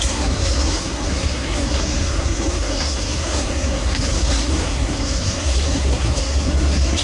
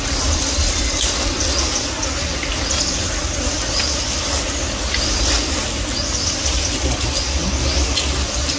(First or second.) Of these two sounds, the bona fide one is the second